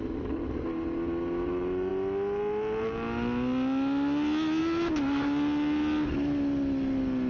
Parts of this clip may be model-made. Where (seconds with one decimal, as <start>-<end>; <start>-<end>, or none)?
none